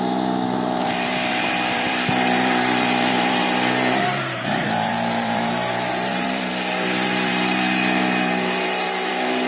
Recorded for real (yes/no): no